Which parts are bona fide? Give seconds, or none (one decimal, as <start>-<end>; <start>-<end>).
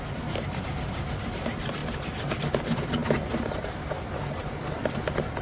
0.0-5.4